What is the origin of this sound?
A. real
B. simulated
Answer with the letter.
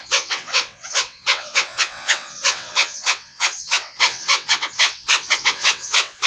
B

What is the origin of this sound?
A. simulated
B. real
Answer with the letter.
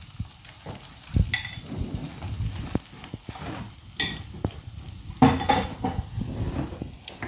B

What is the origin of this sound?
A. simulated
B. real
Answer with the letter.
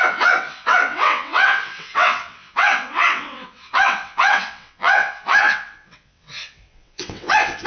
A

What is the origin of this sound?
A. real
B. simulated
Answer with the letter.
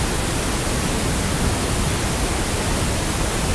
A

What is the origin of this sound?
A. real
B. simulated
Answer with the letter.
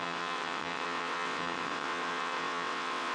B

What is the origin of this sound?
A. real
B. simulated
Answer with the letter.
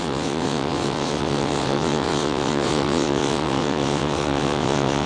B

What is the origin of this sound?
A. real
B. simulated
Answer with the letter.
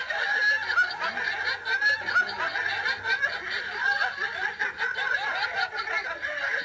A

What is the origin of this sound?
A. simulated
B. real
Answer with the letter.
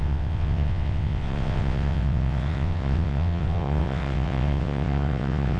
A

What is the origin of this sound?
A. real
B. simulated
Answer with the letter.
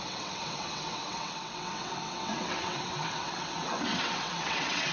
B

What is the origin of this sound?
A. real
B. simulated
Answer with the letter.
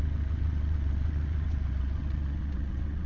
B